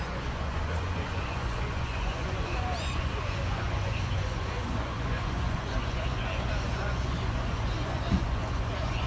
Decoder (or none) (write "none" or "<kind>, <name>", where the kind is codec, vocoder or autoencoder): vocoder, Vocos